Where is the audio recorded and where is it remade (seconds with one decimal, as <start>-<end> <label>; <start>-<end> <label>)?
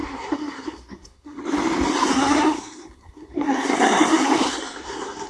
0.0-1.4 remade; 1.4-2.0 recorded; 2.0-5.3 remade